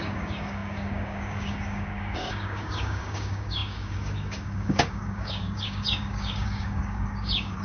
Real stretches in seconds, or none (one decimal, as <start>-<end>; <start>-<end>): none